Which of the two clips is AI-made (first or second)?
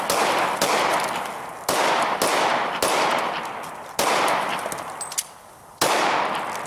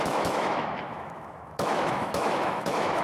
second